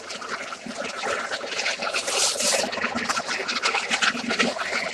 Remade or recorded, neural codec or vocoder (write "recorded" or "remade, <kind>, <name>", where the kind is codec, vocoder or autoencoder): remade, vocoder, BigVGAN v2